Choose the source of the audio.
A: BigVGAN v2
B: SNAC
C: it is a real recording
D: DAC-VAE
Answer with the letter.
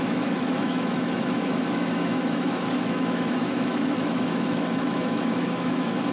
D